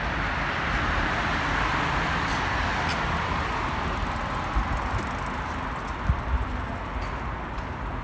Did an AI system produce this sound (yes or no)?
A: no